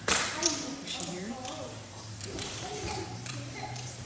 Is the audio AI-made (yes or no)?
yes